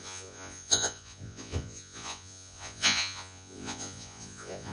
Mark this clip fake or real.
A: fake